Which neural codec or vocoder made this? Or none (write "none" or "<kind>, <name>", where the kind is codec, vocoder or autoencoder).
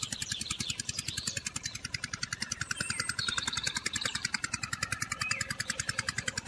vocoder, BigVGAN v2